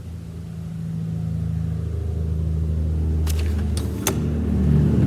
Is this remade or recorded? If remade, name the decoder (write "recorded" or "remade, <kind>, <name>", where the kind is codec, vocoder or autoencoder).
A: recorded